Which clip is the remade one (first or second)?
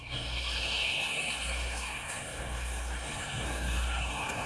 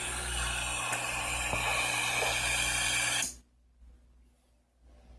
first